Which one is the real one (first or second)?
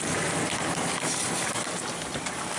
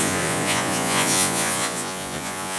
first